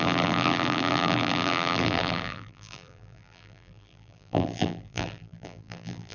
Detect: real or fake fake